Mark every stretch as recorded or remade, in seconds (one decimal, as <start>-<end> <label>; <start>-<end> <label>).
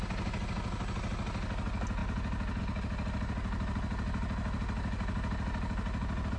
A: 0.0-6.4 recorded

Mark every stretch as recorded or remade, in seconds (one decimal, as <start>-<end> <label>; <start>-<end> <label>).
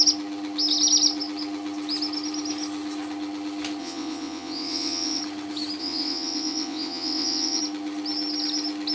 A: 0.0-3.8 recorded; 3.8-5.2 remade; 5.2-5.8 recorded; 5.8-7.6 remade; 7.6-8.9 recorded